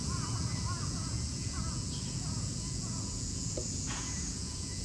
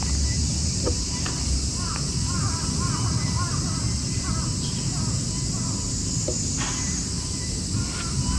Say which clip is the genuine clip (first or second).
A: second